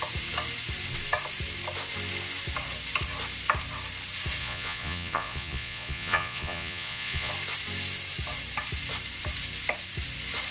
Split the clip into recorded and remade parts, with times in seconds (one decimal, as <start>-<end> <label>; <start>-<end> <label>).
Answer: 0.0-4.4 recorded; 4.4-7.3 remade; 7.3-10.5 recorded